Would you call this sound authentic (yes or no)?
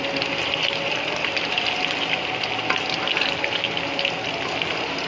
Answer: yes